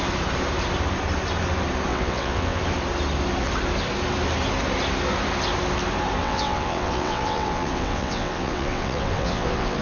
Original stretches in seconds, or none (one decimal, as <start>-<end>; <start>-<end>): 0.0-1.9; 2.6-6.2